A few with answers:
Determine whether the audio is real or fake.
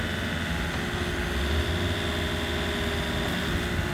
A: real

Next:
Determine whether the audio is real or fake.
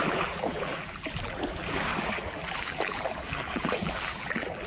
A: fake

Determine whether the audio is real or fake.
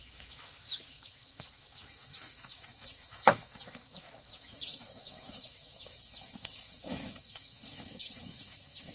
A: fake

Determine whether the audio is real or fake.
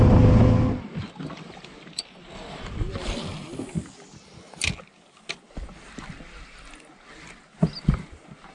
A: real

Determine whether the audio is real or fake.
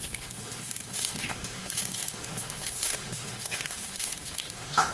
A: fake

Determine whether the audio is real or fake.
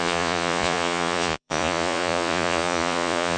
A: fake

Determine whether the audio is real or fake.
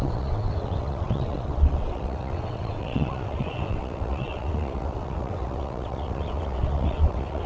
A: fake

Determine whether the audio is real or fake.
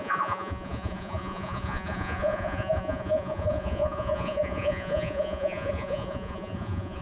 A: fake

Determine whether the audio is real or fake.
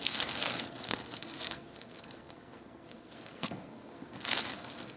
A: fake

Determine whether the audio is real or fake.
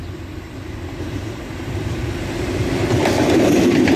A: fake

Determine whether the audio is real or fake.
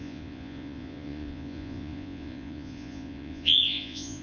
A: fake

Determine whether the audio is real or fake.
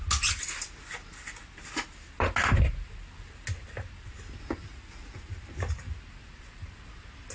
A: real